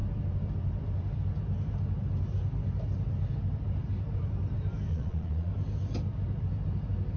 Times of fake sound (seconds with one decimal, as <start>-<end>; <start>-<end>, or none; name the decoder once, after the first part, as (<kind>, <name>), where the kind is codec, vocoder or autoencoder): 4.9-5.5 (vocoder, Vocos)